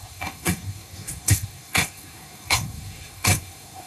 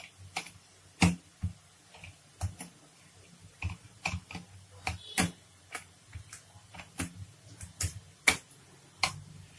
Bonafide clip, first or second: second